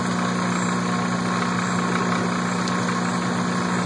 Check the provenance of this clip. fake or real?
real